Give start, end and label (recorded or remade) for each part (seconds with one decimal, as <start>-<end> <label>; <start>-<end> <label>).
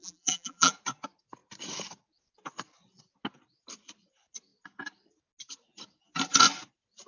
0.0-0.7 remade; 0.7-7.1 recorded